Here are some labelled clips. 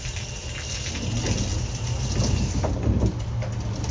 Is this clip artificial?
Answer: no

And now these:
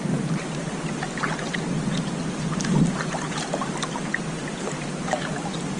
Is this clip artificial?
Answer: no